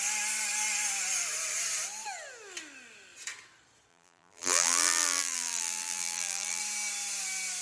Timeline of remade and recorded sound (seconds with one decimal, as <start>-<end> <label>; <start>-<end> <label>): 0.0-3.9 recorded; 3.9-6.6 remade; 6.6-7.6 recorded